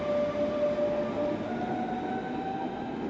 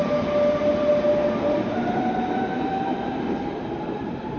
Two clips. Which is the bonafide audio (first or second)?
first